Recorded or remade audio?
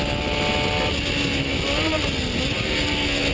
recorded